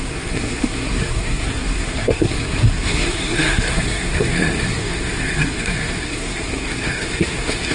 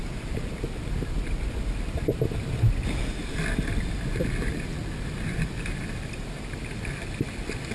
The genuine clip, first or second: second